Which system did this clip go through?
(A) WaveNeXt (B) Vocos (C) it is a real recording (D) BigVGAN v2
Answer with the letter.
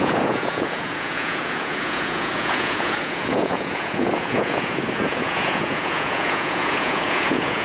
B